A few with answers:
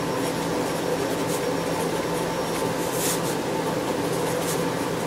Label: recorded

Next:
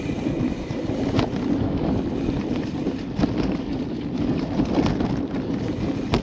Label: recorded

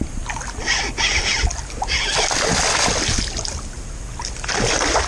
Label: recorded